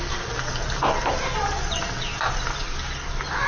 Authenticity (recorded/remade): recorded